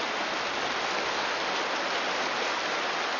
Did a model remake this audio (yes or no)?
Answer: no